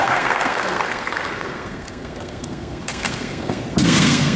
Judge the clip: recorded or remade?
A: remade